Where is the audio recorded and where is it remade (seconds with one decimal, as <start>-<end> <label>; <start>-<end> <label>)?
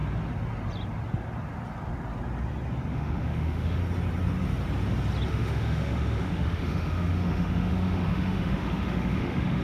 0.0-2.9 recorded; 2.9-3.8 remade; 3.8-5.3 recorded; 5.3-9.6 remade